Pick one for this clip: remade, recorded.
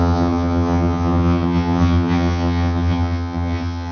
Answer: remade